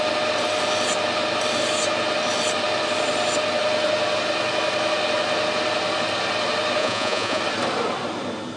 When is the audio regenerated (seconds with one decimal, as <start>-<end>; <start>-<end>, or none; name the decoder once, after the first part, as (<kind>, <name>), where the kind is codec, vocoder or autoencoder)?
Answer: 6.8-7.4 (vocoder, Vocos)